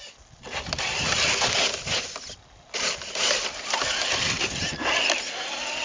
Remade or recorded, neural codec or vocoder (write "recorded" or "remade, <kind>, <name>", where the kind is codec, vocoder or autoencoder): recorded